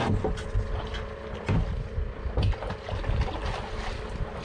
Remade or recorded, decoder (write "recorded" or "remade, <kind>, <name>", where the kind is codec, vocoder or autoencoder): recorded